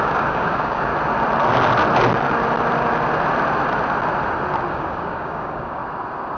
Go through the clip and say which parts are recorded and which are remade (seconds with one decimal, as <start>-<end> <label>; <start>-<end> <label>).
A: 0.0-0.9 remade; 0.9-4.7 recorded; 4.7-5.8 remade; 5.8-6.4 recorded